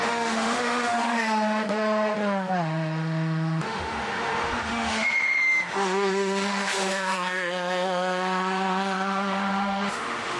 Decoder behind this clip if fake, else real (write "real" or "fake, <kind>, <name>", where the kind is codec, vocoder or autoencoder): fake, autoencoder, DAC-VAE